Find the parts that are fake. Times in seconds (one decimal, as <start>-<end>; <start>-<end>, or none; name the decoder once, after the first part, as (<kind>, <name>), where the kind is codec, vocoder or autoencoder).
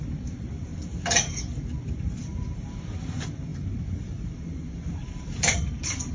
0.0-0.7 (vocoder, BigVGAN v2); 1.9-6.1